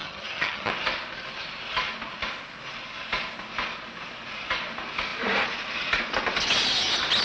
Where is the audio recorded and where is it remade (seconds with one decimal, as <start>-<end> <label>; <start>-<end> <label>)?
0.0-0.7 remade; 0.7-7.2 recorded